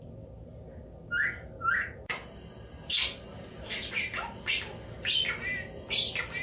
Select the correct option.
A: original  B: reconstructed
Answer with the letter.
A